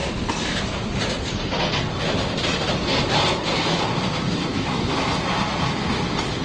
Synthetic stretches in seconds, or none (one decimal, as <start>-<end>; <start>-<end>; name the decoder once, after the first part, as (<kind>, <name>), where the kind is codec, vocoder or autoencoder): 4.5-5.1 (autoencoder, DAC-VAE)